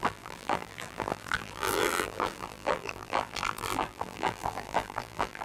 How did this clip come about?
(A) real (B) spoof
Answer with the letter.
B